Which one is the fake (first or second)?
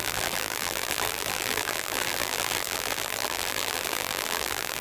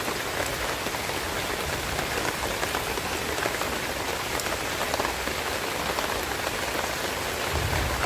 first